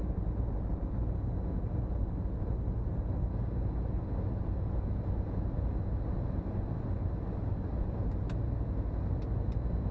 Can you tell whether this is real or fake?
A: real